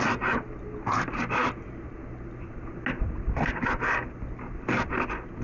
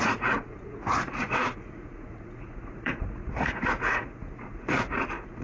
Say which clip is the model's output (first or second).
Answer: second